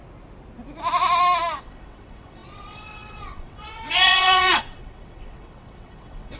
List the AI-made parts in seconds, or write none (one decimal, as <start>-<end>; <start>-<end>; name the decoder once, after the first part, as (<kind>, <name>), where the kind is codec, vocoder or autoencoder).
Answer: 1.6-6.4 (vocoder, WaveNeXt)